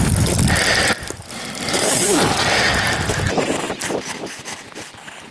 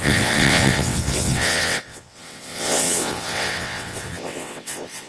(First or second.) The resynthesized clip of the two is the second